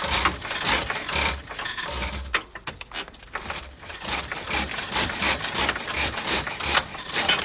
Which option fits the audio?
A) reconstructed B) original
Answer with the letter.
B